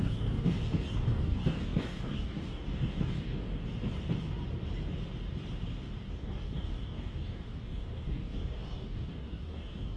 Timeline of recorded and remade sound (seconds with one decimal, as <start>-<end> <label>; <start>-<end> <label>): 0.0-3.6 remade; 3.6-6.1 recorded; 6.1-10.0 remade